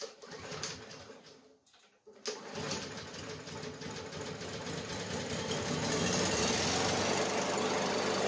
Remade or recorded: recorded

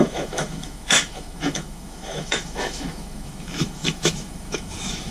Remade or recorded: remade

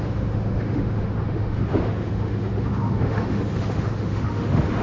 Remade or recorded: remade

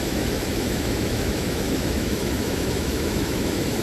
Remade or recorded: remade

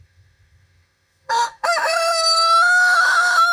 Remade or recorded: remade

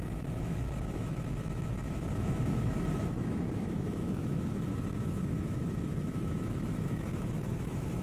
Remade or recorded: remade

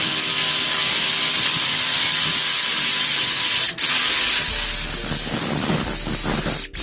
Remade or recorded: recorded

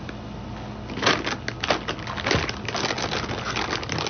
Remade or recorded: recorded